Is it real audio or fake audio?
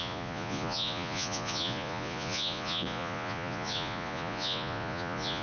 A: fake